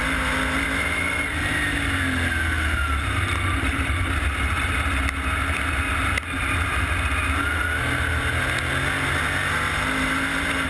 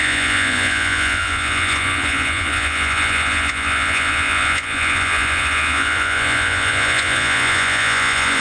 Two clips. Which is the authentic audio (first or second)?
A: first